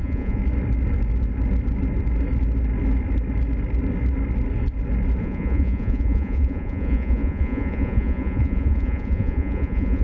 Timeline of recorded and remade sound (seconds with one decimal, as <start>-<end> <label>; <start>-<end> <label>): 0.0-0.4 remade; 0.4-5.2 recorded; 5.2-10.0 remade